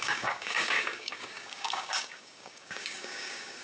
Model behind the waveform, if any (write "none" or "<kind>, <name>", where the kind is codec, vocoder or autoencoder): codec, DAC